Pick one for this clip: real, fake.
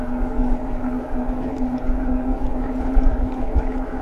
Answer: fake